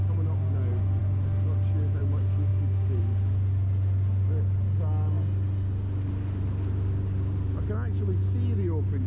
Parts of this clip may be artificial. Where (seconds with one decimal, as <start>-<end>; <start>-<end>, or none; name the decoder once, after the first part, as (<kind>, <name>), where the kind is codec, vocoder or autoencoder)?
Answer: none